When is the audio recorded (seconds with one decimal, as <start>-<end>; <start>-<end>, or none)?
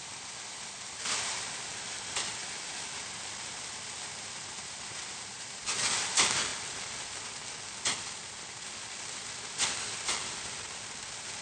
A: 0.0-11.4